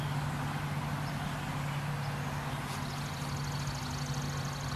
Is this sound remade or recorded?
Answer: recorded